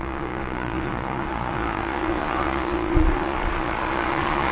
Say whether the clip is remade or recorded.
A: remade